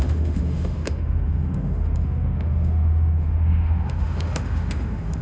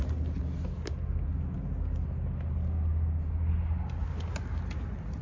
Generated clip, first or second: first